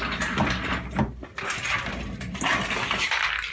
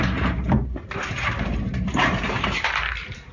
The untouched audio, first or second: first